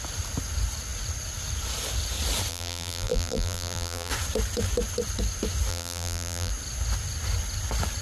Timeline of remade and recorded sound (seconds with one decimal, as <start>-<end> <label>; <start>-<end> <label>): 0.0-2.5 recorded; 2.5-4.1 remade; 4.1-5.7 recorded; 5.7-6.5 remade; 6.5-8.0 recorded